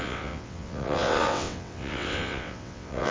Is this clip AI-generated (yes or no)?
yes